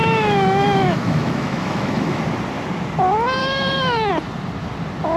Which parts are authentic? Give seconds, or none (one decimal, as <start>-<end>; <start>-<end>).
2.2-3.4; 4.1-5.2